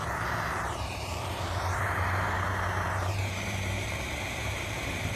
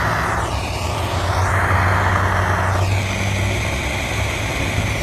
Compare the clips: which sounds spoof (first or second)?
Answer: first